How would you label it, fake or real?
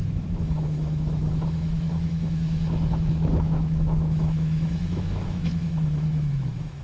fake